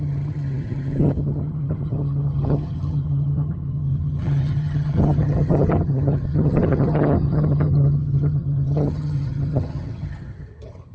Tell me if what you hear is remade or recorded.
remade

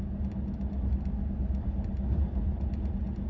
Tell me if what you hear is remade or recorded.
recorded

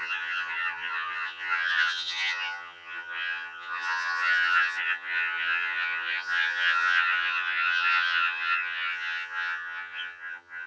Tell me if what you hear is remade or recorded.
remade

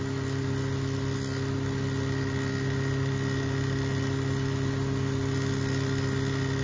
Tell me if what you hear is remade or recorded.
recorded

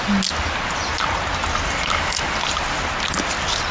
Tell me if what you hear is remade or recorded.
recorded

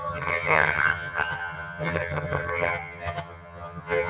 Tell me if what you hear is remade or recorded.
remade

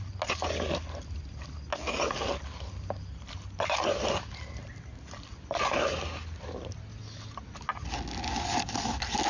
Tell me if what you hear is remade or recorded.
recorded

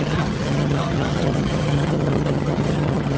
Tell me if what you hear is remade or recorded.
remade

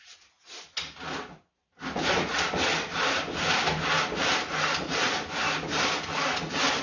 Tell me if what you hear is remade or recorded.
recorded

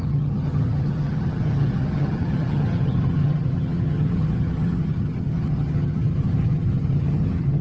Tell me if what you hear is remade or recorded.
remade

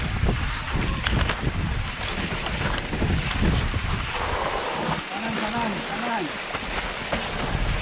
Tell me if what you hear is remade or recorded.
recorded